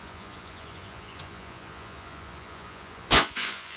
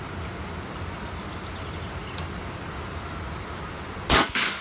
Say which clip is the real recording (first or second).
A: second